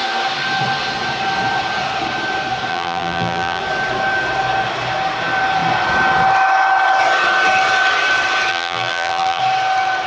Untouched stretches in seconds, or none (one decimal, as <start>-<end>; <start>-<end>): 0.0-2.7; 3.6-8.5; 9.4-10.1